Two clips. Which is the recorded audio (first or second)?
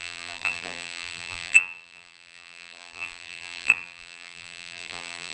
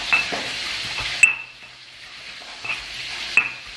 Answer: second